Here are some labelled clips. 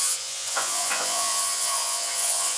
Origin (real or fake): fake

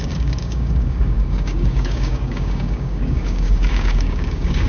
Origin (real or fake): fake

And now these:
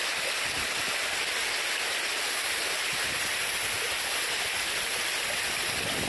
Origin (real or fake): real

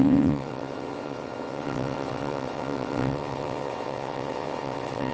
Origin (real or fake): fake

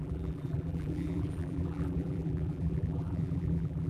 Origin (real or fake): fake